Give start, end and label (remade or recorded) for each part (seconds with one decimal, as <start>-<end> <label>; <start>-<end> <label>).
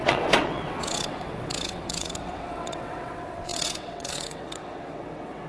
0.0-5.5 remade